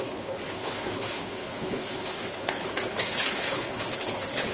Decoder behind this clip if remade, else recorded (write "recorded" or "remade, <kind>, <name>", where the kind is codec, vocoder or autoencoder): remade, codec, HILCodec